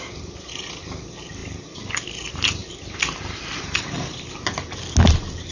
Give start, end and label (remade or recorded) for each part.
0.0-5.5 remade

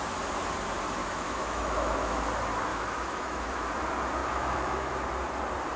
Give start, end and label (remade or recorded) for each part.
0.0-1.0 recorded; 1.0-2.2 remade; 2.2-2.7 recorded; 2.7-3.7 remade; 3.7-4.2 recorded; 4.2-4.9 remade; 4.9-5.8 recorded

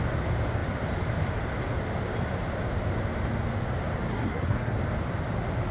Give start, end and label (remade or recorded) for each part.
0.0-4.1 recorded; 4.1-4.8 remade; 4.8-5.7 recorded

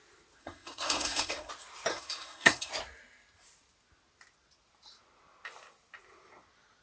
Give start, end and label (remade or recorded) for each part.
0.0-0.4 recorded; 0.4-1.5 remade; 1.5-1.9 recorded; 1.9-2.7 remade; 2.7-6.8 recorded

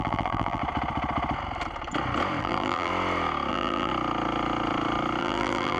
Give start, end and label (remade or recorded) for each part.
0.0-0.6 remade; 0.6-2.4 recorded; 2.4-2.9 remade; 2.9-3.5 recorded; 3.5-3.9 remade; 3.9-5.2 recorded; 5.2-5.8 remade